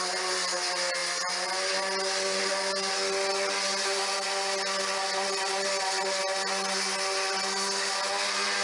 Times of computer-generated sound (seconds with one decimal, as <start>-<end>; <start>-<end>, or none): none